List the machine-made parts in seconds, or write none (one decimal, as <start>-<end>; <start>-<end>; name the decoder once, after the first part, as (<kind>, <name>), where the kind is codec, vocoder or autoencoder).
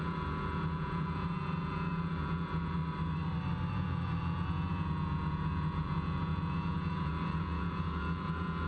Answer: 0.0-2.8 (vocoder, Vocos); 3.7-8.7